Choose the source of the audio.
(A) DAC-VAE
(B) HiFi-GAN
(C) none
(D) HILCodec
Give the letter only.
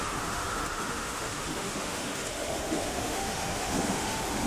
A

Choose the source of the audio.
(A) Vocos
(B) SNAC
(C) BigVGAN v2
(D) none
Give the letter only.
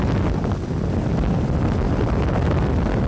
D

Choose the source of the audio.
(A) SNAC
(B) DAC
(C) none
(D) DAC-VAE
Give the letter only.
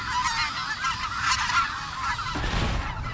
C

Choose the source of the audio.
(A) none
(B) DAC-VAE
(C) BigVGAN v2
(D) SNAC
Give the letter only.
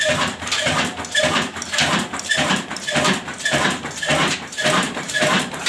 C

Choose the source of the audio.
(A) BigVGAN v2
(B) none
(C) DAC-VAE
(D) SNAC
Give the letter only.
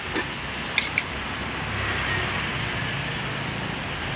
B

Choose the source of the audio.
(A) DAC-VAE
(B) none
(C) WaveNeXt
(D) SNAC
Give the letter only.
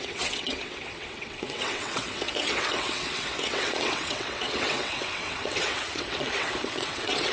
C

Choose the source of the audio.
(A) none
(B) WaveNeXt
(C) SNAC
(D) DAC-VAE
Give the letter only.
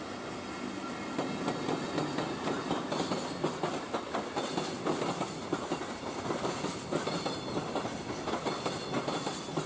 A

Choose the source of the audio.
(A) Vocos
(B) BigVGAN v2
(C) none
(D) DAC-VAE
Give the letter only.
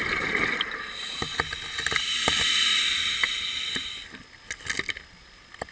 C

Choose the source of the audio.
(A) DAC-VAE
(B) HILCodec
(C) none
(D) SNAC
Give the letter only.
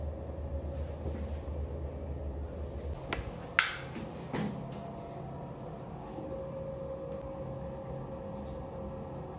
C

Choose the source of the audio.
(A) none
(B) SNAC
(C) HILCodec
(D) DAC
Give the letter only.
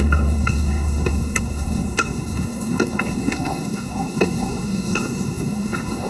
B